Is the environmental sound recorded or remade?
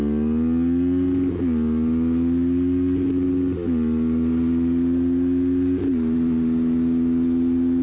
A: recorded